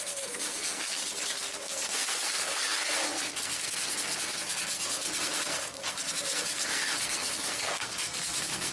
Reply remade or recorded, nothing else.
remade